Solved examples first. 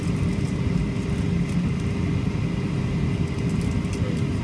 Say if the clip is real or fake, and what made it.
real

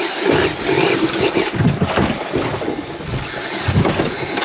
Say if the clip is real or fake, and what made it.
real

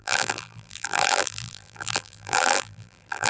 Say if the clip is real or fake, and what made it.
fake, vocoder, BigVGAN v2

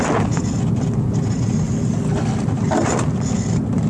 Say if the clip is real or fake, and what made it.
real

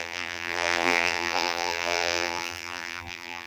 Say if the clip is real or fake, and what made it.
fake, vocoder, BigVGAN v2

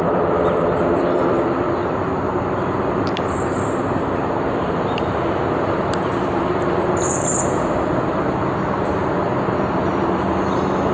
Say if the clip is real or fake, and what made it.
fake, vocoder, BigVGAN v2